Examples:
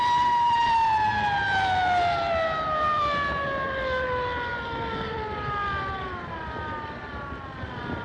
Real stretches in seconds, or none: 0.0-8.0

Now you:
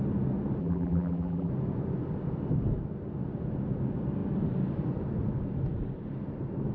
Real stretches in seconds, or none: 0.0-0.6; 1.5-6.7

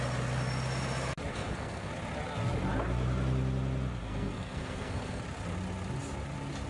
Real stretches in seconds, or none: 0.0-1.3; 1.9-4.0; 5.2-6.7

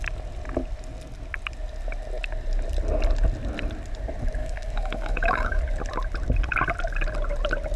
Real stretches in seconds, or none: 0.0-4.4; 5.6-7.8